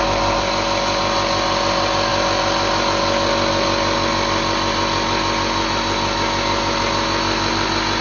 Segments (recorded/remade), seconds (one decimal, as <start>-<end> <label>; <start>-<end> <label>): 0.0-8.0 recorded